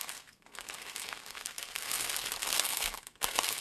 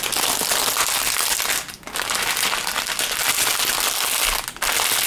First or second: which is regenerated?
first